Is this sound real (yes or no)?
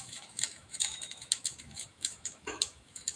no